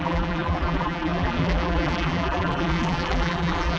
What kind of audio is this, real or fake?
fake